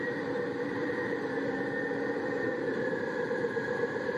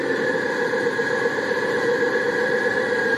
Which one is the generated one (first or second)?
first